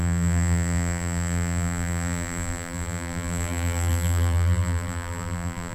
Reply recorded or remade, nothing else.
remade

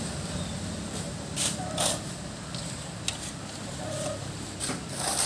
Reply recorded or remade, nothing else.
recorded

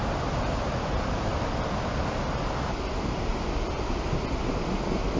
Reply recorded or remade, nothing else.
recorded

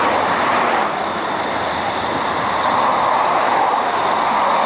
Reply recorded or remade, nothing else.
remade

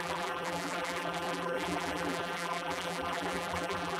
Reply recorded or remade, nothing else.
remade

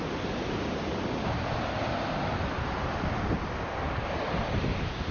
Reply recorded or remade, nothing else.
recorded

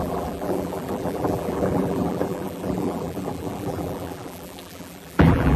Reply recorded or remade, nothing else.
remade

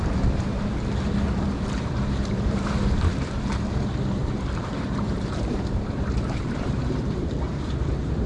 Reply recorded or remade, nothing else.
remade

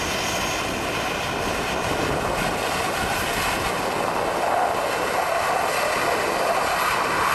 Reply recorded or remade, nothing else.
recorded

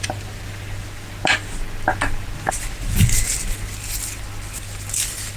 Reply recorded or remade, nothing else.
recorded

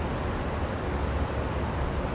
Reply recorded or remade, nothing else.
remade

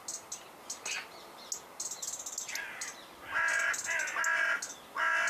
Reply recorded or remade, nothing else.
recorded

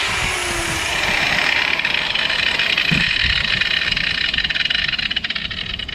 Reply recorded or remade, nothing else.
recorded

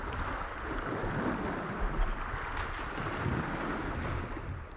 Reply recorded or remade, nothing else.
recorded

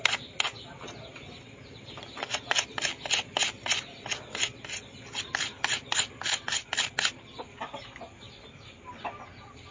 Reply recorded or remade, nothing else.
recorded